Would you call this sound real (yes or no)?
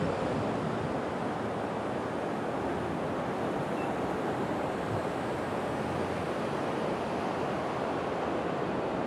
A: yes